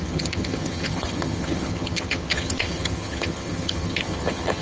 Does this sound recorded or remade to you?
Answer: remade